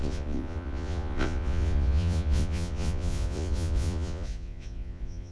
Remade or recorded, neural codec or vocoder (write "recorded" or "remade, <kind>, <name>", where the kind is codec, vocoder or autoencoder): remade, vocoder, Vocos